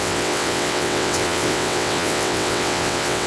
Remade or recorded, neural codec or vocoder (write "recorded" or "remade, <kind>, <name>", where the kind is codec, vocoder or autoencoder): remade, vocoder, WaveNeXt